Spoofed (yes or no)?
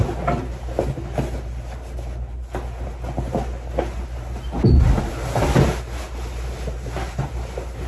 no